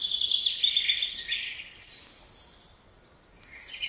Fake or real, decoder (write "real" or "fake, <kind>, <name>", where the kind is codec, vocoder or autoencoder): real